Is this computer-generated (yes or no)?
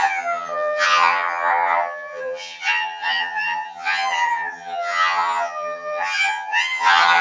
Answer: yes